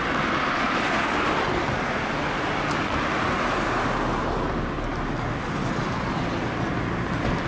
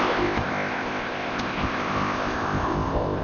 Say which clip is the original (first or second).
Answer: first